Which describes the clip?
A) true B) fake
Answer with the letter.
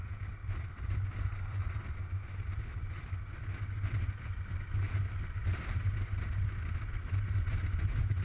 A